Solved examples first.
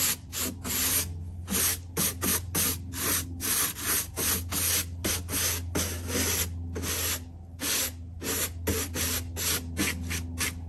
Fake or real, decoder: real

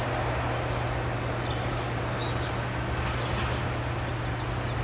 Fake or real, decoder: real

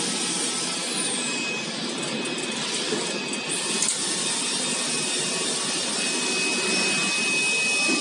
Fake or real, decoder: real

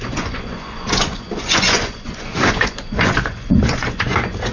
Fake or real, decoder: fake, vocoder, Vocos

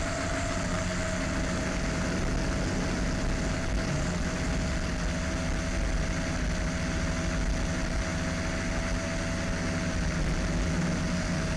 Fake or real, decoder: real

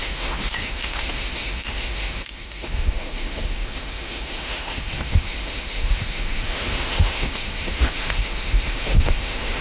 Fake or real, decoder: fake, autoencoder, DAC-VAE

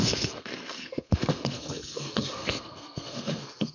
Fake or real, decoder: fake, codec, SNAC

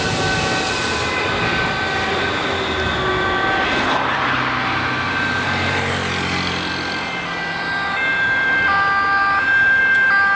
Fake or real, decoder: real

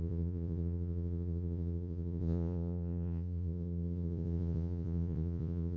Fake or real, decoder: fake, vocoder, Vocos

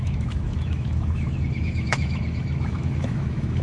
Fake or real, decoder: fake, autoencoder, DAC-VAE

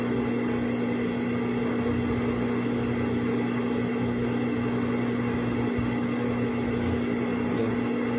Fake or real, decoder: real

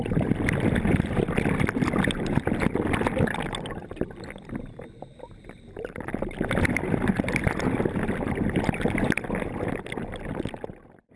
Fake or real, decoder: real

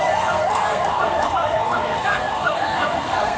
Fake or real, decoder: fake, codec, SNAC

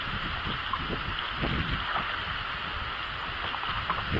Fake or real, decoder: real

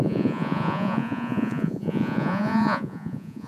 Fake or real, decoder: fake, vocoder, Vocos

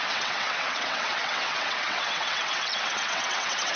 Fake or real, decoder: fake, vocoder, WaveNeXt